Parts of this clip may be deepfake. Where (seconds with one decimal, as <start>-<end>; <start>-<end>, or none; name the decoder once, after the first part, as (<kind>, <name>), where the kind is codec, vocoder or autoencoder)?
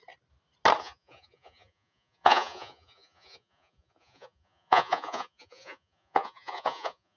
0.8-7.2 (vocoder, Vocos)